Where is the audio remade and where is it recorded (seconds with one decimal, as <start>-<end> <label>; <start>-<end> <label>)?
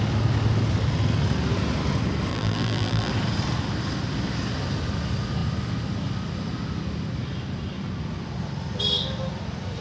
0.0-2.3 recorded; 2.3-3.1 remade; 3.1-9.8 recorded